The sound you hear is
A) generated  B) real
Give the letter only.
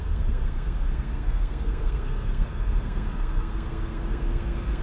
A